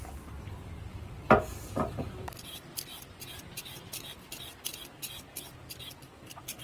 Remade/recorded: recorded